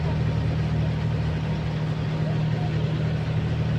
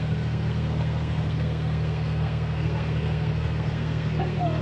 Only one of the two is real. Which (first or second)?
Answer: first